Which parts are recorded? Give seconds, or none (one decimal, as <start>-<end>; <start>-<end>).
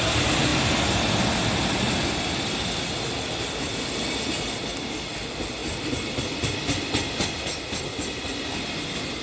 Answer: 0.0-9.2